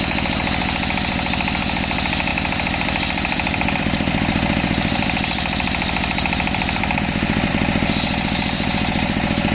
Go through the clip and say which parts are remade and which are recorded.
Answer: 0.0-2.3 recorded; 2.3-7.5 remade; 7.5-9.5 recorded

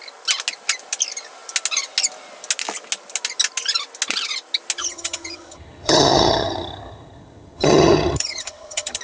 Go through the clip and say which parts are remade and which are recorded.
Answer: 0.0-4.8 recorded; 4.8-9.0 remade

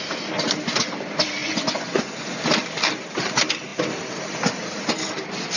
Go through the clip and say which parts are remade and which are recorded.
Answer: 0.0-1.4 recorded; 1.4-2.4 remade; 2.4-5.6 recorded